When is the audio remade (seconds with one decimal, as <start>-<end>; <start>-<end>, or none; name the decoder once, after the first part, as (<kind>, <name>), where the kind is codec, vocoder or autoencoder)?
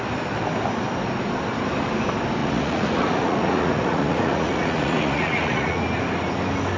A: 2.4-5.8 (vocoder, Vocos)